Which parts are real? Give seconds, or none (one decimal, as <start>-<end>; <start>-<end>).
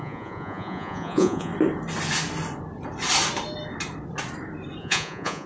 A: 1.5-4.8